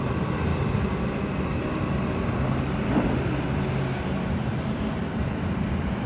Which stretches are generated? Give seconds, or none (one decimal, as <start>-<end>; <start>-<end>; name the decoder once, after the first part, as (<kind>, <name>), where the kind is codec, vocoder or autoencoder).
0.0-6.1 (vocoder, BigVGAN v2)